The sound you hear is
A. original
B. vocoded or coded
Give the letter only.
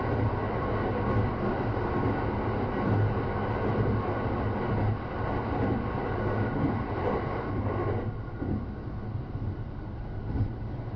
A